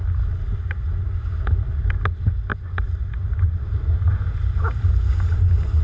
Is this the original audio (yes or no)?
yes